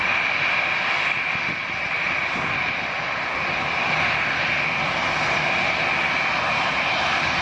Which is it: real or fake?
real